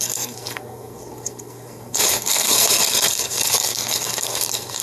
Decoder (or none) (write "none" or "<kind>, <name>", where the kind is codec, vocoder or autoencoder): codec, SNAC